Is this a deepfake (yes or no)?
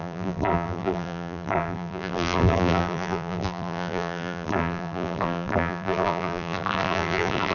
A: yes